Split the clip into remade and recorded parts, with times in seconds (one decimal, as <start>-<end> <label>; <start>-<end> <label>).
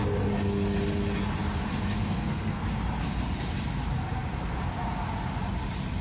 0.0-2.0 recorded; 2.0-2.6 remade; 2.6-6.0 recorded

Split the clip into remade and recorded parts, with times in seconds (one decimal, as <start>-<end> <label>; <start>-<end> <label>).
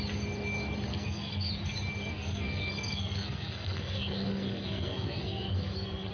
0.0-0.9 recorded; 0.9-1.5 remade; 1.5-2.1 recorded; 2.1-6.1 remade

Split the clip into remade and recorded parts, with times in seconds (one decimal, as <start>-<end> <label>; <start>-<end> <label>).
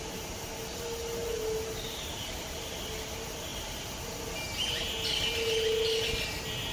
0.0-6.7 recorded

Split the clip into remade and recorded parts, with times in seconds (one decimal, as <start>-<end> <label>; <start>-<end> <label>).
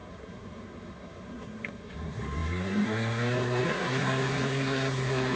0.0-5.4 remade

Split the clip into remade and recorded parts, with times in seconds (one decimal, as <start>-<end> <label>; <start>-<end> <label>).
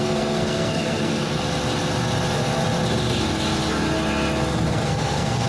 0.0-1.4 remade; 1.4-4.7 recorded; 4.7-5.5 remade